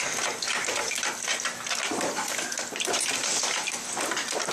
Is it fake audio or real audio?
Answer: real